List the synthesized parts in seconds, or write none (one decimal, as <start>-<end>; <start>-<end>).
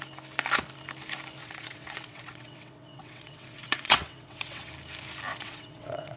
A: 1.4-4.7; 5.3-6.2